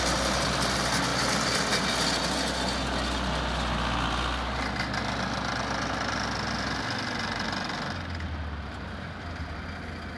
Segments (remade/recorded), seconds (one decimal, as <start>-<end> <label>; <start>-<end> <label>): 0.0-10.2 recorded